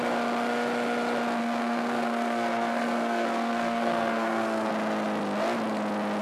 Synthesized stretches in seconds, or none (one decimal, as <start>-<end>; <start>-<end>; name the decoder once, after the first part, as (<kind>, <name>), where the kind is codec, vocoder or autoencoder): 1.4-4.7 (codec, SNAC)